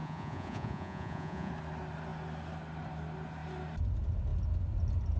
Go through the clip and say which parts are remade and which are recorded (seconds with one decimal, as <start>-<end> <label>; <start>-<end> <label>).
0.0-1.5 remade; 1.5-5.2 recorded